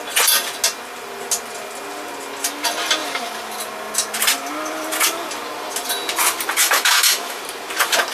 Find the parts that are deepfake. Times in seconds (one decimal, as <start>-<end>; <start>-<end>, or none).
6.6-7.4